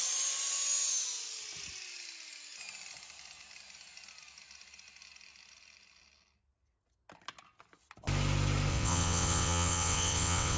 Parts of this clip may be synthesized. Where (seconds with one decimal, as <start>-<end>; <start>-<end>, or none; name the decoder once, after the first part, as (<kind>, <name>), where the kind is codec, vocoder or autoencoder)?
8.7-10.6 (vocoder, WaveNeXt)